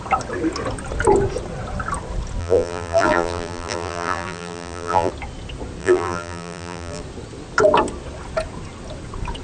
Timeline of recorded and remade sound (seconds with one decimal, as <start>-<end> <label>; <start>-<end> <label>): 0.0-2.4 recorded; 2.4-5.1 remade; 5.1-5.8 recorded; 5.8-7.0 remade; 7.0-9.4 recorded